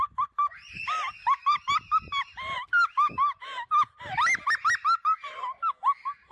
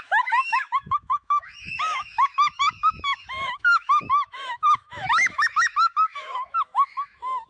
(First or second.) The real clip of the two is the first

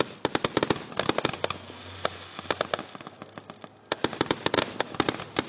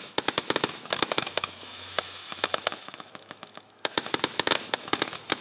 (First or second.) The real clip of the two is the first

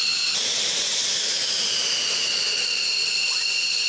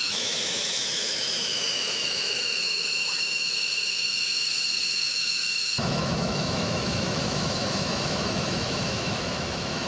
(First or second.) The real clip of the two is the first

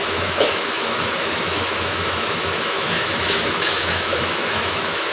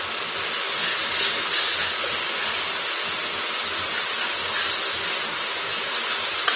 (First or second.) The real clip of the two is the second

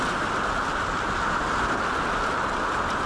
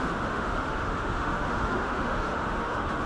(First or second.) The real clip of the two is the first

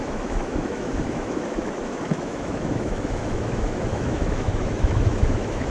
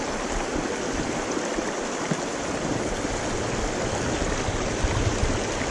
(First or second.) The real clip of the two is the second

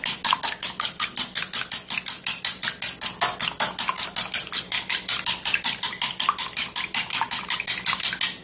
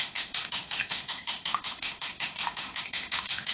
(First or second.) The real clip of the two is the first